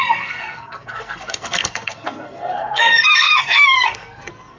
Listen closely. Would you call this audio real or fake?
fake